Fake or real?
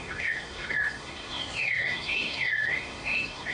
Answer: fake